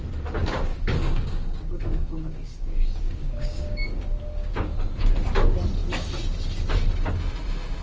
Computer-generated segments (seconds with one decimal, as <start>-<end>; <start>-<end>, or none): 0.4-4.7